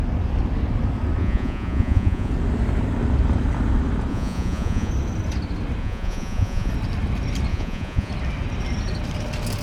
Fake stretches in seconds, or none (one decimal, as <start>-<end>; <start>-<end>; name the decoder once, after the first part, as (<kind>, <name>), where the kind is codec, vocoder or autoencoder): 1.2-2.3 (vocoder, Vocos); 4.1-4.9; 5.8-6.7; 7.5-8.1